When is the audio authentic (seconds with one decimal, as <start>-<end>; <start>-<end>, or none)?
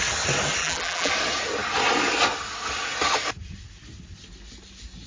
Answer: 0.0-0.6; 1.1-5.1